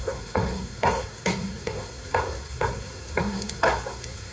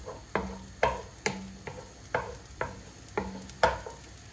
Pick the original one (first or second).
second